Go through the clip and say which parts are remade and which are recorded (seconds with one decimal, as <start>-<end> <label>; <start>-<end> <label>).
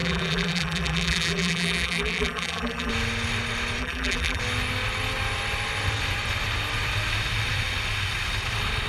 0.0-2.9 remade; 2.9-3.8 recorded; 3.8-4.4 remade; 4.4-8.9 recorded